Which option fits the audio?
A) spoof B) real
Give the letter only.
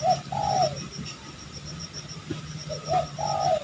B